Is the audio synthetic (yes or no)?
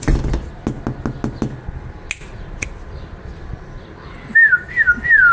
no